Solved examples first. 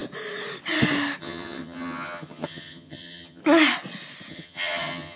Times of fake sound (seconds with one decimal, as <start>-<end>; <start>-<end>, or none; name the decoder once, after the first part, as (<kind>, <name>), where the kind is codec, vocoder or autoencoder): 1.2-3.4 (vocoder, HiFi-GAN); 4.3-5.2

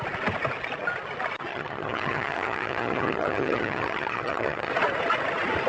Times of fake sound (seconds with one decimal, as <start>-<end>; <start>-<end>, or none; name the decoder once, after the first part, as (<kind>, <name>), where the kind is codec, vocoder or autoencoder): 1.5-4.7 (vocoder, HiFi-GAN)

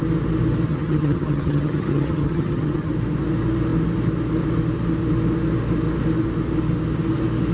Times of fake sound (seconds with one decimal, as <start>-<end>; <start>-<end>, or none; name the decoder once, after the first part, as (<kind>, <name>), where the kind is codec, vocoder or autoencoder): 0.7-2.9 (vocoder, HiFi-GAN)

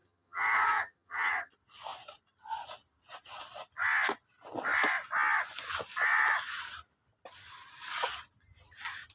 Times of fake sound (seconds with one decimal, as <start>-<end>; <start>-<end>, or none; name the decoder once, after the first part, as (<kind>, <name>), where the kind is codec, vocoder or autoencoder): 0.0-1.5 (vocoder, HiFi-GAN)

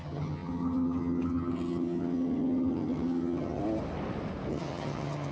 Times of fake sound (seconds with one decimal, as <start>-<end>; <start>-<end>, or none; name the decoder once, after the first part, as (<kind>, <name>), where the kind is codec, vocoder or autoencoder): 0.0-3.6 (vocoder, HiFi-GAN); 4.5-5.3

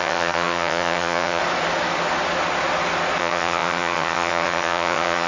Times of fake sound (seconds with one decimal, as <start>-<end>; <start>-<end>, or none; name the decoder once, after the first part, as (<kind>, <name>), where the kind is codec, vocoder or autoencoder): 0.0-1.4 (vocoder, HiFi-GAN); 3.2-5.3

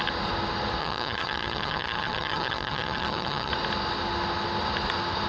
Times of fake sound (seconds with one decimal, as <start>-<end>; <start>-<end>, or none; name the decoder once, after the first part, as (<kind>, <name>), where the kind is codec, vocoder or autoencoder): 0.8-3.5 (vocoder, HiFi-GAN)